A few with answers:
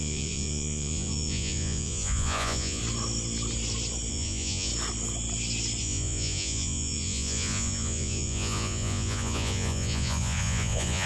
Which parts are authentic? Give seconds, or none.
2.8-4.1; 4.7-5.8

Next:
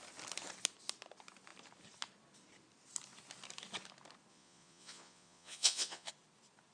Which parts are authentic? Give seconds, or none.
0.0-4.3; 6.1-6.7

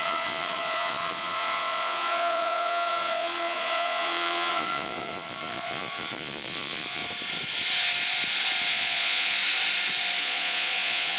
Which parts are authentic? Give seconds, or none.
7.0-8.7; 9.4-10.2

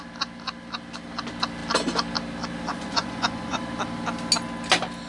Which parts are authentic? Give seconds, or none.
0.0-2.7; 3.6-5.1

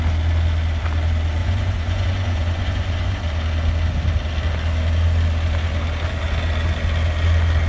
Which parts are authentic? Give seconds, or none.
0.0-1.4; 3.2-7.7

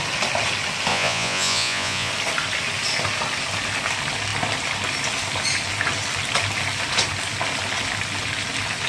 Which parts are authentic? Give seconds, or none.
0.0-0.9; 2.1-8.9